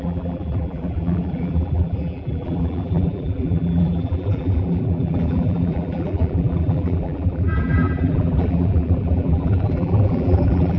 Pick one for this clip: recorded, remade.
remade